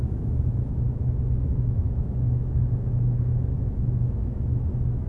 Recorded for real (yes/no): no